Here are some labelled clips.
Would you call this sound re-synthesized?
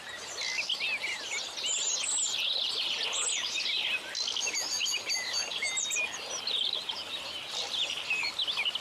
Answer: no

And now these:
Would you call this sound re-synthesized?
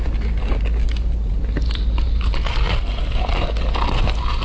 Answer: no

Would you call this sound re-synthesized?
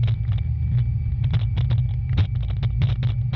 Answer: no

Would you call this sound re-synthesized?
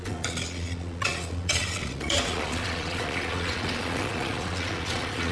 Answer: yes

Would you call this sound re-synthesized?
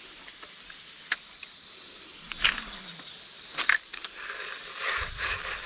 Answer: no